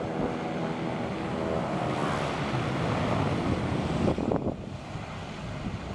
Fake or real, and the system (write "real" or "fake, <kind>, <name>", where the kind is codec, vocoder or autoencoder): real